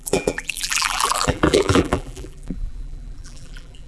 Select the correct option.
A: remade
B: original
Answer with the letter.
A